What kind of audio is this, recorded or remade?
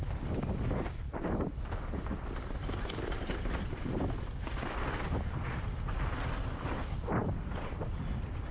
remade